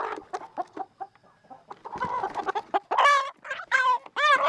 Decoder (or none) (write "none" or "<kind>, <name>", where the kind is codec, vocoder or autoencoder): none